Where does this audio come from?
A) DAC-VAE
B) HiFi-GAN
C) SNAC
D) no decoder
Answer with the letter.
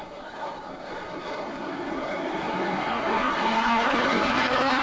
C